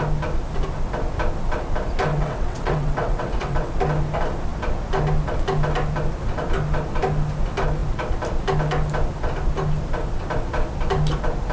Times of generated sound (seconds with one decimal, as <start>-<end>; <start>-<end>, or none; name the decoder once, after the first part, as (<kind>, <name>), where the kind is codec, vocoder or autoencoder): 2.1-3.7 (vocoder, WaveNeXt)